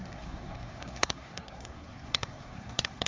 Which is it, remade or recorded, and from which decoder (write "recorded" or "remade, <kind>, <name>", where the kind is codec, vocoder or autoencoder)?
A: remade, codec, SNAC